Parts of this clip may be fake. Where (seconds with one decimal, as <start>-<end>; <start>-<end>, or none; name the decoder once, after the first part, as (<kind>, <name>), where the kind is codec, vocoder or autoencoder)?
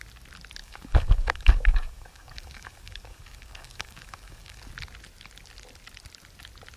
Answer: 0.6-4.7 (codec, DAC)